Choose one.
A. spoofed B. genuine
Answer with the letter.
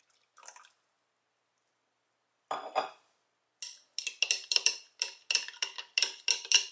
B